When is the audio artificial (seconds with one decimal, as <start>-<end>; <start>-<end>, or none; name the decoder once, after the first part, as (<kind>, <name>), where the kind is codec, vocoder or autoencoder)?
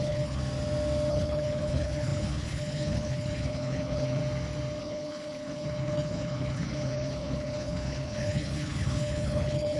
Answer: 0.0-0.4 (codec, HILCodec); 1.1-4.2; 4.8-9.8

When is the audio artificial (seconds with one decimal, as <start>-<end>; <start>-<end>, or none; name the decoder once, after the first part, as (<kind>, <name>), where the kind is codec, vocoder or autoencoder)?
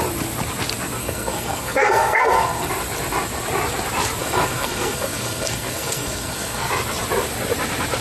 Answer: 1.0-2.7 (codec, SNAC); 4.2-6.7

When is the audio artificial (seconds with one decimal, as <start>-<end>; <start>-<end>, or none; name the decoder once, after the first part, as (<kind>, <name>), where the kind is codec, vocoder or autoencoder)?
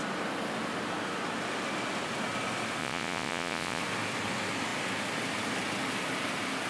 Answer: 2.8-3.8 (vocoder, Vocos)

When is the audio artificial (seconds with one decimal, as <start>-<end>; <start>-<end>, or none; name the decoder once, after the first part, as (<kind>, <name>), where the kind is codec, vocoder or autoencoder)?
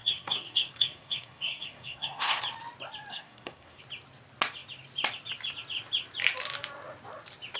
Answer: 0.0-2.4 (codec, SNAC); 3.1-3.8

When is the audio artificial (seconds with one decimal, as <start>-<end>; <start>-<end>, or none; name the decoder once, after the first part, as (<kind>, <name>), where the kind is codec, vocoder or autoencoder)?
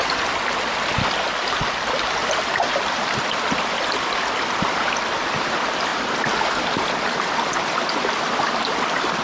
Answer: 0.0-9.2 (vocoder, BigVGAN v2)